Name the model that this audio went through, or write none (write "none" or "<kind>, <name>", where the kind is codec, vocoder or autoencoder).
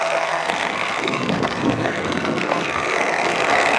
codec, SNAC